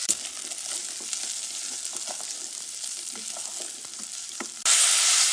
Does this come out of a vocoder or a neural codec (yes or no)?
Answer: no